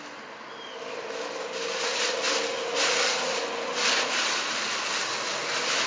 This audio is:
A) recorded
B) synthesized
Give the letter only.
A